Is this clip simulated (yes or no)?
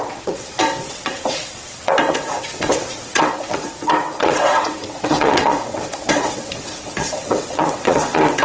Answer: yes